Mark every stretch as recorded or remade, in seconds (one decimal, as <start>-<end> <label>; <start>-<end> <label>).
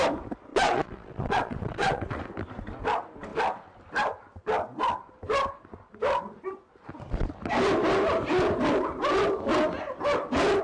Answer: 0.0-0.5 recorded; 0.5-2.2 remade; 2.2-10.6 recorded